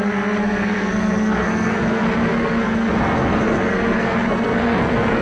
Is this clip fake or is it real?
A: fake